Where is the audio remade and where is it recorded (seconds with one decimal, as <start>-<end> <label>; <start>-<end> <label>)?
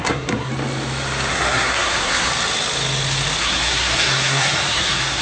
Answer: 0.0-0.5 remade; 0.5-1.3 recorded; 1.3-2.3 remade; 2.3-3.4 recorded; 3.4-5.2 remade